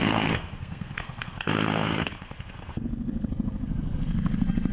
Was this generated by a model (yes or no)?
yes